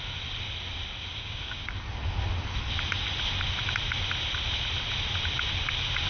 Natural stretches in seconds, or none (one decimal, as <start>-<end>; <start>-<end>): 0.0-1.1; 1.7-6.1